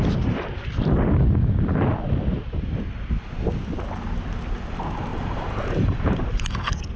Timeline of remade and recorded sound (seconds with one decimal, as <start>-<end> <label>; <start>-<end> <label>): 0.0-5.1 recorded; 5.1-6.4 remade; 6.4-7.0 recorded